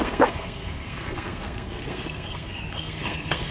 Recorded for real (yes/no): no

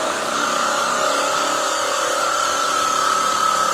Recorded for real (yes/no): no